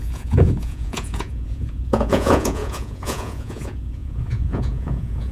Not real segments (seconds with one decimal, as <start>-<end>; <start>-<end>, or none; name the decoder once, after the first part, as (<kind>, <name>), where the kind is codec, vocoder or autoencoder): 0.0-5.3 (vocoder, Vocos)

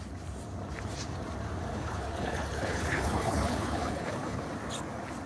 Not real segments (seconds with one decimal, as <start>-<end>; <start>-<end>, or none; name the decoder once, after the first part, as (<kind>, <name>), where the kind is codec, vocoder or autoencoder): 1.7-4.4 (codec, HILCodec)

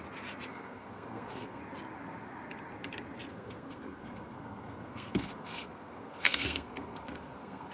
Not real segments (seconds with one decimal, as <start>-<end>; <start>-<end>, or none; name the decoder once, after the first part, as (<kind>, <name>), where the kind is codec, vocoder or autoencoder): 0.5-1.6 (codec, SNAC); 3.3-7.7

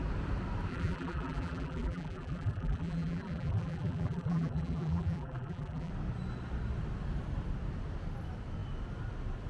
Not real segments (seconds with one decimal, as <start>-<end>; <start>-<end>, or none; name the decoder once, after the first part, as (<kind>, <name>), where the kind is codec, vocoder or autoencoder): 0.7-5.9 (vocoder, BigVGAN v2)

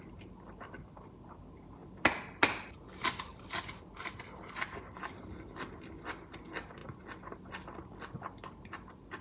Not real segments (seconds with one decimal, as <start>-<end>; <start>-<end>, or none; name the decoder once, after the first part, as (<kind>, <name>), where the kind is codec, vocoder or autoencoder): 3.3-5.1 (vocoder, BigVGAN v2)

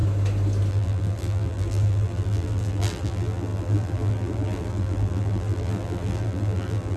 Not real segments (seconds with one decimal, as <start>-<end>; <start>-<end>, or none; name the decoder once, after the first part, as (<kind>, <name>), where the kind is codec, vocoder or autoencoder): 0.7-7.0 (vocoder, BigVGAN v2)

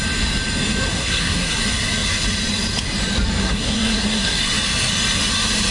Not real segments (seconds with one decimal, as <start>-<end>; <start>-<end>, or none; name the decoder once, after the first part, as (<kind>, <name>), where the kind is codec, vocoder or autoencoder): 0.9-1.6 (codec, SNAC); 3.4-4.4